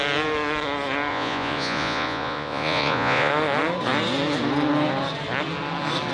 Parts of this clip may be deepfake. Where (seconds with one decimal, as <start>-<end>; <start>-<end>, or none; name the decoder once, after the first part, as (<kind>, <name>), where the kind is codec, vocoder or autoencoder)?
1.1-3.3 (vocoder, Vocos)